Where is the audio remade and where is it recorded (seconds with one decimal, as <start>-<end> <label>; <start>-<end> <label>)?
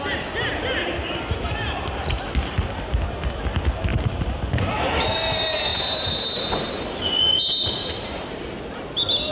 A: 0.0-9.3 recorded